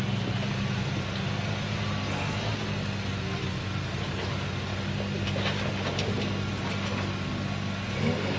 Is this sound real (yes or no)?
yes